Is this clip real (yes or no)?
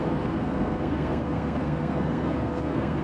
no